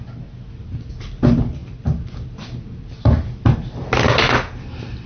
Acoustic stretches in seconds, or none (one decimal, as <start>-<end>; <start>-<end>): 0.0-5.1